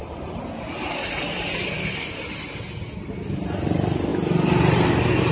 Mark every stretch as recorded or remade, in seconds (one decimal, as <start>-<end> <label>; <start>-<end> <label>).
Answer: 0.0-5.3 recorded